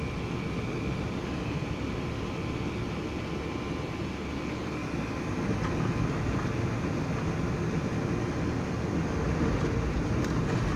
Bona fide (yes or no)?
yes